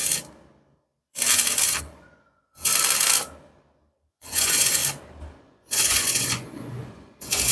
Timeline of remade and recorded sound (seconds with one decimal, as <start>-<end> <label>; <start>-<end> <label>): 0.0-1.8 recorded; 1.8-2.7 remade; 2.7-4.1 recorded; 4.1-4.8 remade; 4.8-5.4 recorded; 5.4-7.5 remade